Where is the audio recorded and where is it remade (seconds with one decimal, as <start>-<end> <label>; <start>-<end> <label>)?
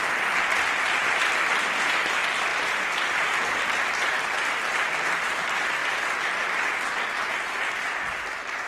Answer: 0.0-8.7 recorded